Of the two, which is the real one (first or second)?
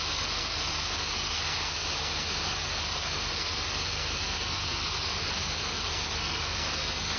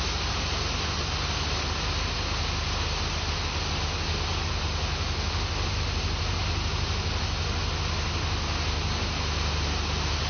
second